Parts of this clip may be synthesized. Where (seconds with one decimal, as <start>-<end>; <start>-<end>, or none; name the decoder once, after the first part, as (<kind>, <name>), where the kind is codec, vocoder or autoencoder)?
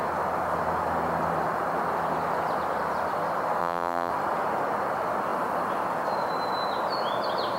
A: 3.6-4.1 (vocoder, BigVGAN v2)